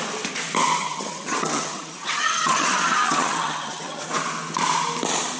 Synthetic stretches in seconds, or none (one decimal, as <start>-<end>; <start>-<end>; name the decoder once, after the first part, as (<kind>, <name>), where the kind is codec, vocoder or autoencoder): 0.8-4.0 (vocoder, HiFi-GAN)